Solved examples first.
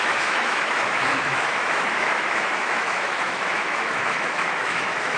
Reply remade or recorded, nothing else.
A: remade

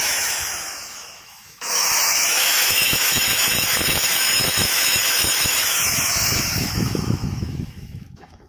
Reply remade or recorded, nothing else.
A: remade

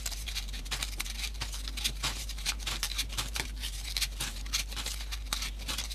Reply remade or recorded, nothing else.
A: remade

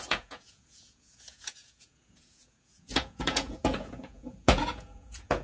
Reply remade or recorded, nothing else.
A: remade